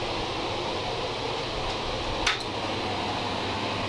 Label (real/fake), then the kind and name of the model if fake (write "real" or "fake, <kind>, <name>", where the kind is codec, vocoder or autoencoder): real